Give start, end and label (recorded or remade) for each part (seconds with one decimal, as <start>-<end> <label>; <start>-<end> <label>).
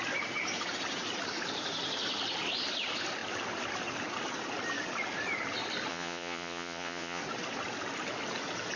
0.0-5.9 recorded; 5.9-7.2 remade; 7.2-8.8 recorded